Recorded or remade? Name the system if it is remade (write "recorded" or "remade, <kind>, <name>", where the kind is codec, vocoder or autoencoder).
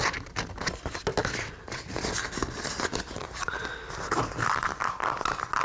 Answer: recorded